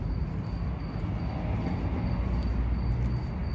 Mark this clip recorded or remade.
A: recorded